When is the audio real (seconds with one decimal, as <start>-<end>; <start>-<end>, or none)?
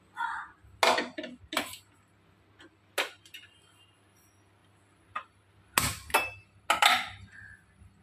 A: 0.0-8.0